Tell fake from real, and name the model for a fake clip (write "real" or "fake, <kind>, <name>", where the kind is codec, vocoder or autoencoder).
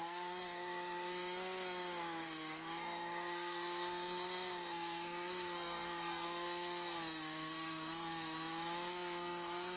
fake, codec, SNAC